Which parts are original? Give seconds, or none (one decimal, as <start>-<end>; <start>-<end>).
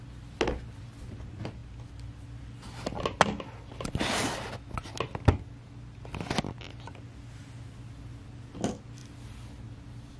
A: 0.0-10.2